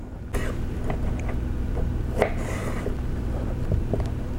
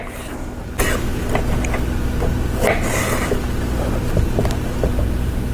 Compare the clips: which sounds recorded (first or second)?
second